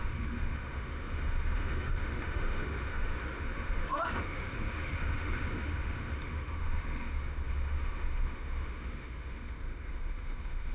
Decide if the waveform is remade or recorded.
remade